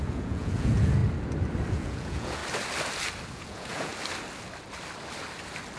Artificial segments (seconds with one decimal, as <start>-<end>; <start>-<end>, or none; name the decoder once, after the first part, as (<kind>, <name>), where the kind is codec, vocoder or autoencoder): 0.0-1.0 (vocoder, Vocos); 1.7-2.4; 3.3-3.9

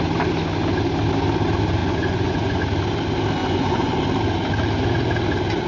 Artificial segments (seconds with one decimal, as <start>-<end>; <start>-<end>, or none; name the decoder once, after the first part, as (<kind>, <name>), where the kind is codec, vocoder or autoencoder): 1.8-2.6 (vocoder, Vocos); 3.4-4.0

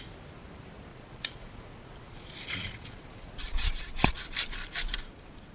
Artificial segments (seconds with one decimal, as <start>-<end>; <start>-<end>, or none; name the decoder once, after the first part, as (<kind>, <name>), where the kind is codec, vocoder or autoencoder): 0.9-4.2 (vocoder, Vocos)

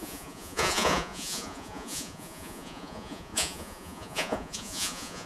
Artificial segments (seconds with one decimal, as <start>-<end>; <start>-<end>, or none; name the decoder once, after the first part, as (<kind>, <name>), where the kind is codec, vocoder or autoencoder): 0.0-5.3 (vocoder, Vocos)

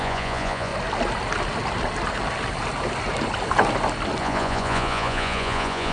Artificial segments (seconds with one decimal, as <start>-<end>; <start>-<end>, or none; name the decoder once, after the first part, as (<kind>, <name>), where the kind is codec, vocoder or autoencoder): 0.0-0.7 (vocoder, Vocos); 4.2-5.9

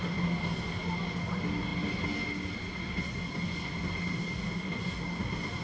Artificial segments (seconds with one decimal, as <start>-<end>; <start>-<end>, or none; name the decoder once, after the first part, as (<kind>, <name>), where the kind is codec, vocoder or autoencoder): none

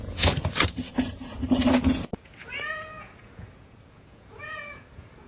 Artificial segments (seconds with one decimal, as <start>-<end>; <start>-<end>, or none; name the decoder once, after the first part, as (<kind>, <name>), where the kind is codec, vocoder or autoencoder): 0.0-5.3 (vocoder, Vocos)